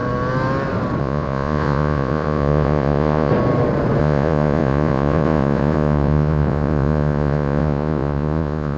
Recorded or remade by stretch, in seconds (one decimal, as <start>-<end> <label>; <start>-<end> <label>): 0.0-1.0 recorded; 1.0-3.3 remade; 3.3-4.0 recorded; 4.0-8.8 remade